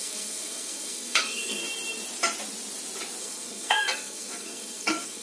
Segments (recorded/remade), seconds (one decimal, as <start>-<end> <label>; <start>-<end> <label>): 0.0-1.6 remade; 1.6-3.2 recorded; 3.2-5.2 remade